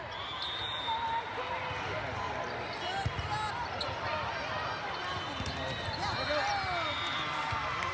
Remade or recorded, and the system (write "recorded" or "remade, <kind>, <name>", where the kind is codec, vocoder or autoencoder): recorded